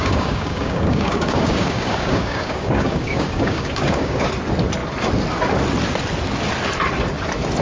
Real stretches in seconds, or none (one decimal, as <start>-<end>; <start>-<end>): 4.3-7.6